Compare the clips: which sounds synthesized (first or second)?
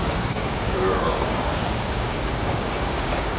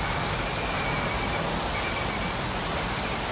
first